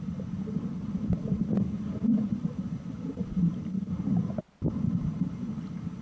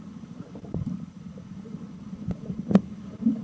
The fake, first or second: second